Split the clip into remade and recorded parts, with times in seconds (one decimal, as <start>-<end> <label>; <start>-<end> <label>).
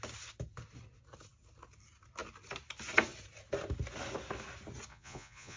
0.0-4.9 recorded; 4.9-5.6 remade